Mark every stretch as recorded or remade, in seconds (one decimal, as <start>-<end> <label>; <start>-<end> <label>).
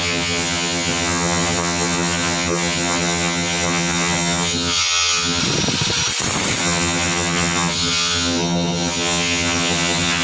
0.0-5.4 remade; 5.4-6.6 recorded; 6.6-10.2 remade